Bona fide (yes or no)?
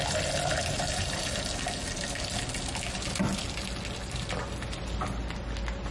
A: yes